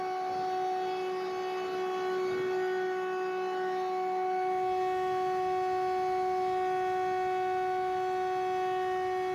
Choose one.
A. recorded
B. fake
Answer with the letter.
A